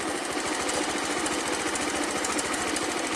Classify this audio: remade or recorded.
recorded